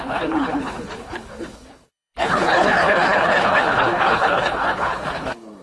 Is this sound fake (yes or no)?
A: yes